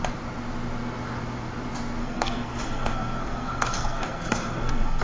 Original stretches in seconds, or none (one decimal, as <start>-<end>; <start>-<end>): 0.0-2.0